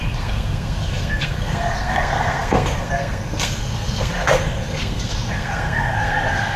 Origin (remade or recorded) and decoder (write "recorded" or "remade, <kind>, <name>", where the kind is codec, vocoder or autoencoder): remade, codec, SNAC